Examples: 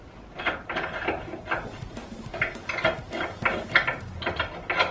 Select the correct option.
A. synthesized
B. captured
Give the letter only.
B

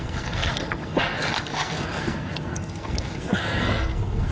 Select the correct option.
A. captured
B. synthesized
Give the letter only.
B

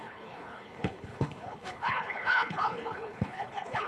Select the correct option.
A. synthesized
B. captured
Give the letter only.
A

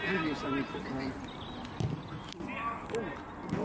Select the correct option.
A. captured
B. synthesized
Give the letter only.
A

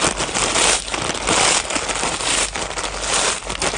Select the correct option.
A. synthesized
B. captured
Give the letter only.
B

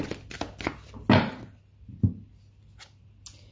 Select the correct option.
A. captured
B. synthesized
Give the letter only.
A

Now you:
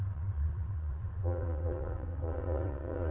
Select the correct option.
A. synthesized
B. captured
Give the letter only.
A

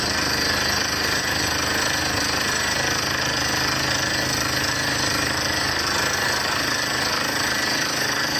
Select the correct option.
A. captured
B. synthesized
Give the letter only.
A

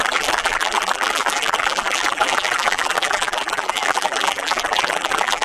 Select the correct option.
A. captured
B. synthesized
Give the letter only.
B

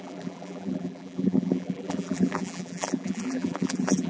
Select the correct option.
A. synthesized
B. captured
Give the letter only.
A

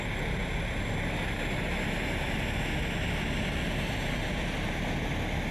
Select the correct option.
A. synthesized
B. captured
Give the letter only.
B